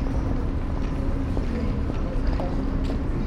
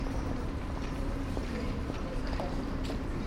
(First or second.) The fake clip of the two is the second